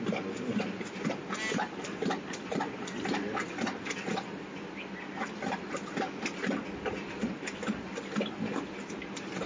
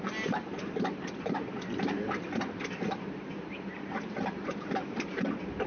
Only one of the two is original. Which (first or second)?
first